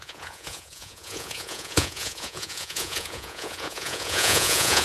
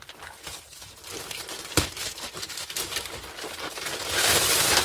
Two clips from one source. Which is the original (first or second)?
second